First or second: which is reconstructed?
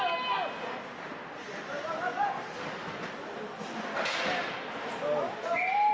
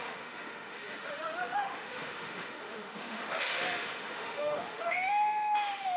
second